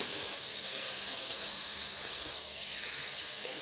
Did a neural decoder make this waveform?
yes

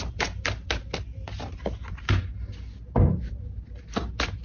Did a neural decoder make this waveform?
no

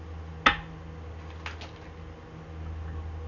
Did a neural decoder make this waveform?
no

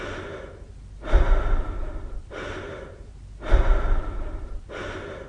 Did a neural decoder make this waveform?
no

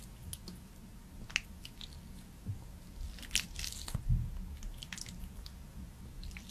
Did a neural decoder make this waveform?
no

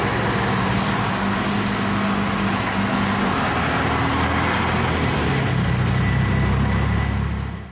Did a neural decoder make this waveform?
no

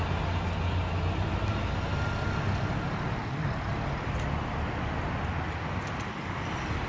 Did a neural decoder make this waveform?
no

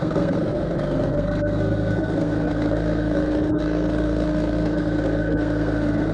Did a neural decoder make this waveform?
yes